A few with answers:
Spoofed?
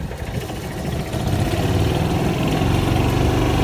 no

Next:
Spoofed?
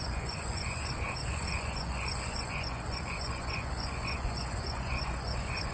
yes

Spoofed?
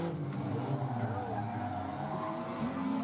no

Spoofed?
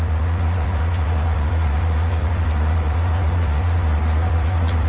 yes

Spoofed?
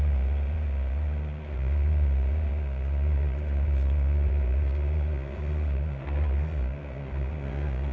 yes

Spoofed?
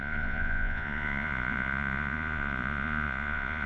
yes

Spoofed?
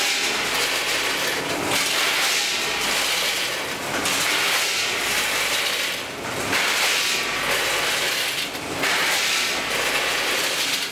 no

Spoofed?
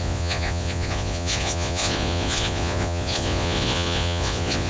yes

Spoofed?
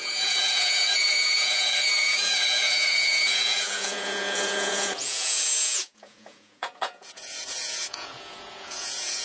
yes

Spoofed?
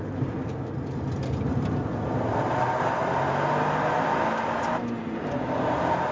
no